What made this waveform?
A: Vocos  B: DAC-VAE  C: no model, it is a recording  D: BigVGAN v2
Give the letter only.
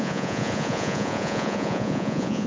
A